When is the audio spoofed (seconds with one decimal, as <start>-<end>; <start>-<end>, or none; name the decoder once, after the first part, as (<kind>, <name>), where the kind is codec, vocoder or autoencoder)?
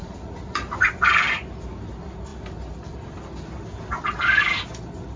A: 0.0-1.1 (vocoder, BigVGAN v2); 2.3-3.4